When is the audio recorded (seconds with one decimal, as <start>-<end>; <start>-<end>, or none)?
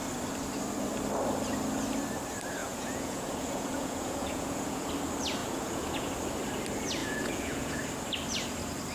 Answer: 0.0-2.6; 4.9-5.4; 6.1-7.0; 7.8-8.9